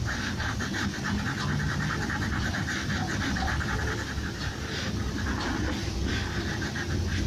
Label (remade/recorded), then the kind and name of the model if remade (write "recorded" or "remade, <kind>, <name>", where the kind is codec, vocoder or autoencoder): recorded